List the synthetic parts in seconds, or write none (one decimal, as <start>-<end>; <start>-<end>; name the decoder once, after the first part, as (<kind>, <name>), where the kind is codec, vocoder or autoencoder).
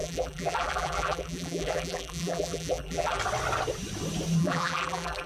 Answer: 0.0-3.2 (vocoder, BigVGAN v2); 4.4-5.3